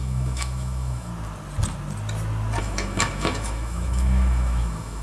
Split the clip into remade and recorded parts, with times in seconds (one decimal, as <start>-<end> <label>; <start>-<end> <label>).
0.0-1.1 remade; 1.1-2.6 recorded; 2.6-5.0 remade